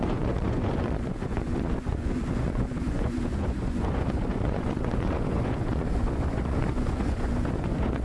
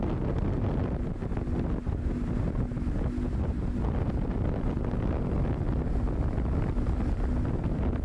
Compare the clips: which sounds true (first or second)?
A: second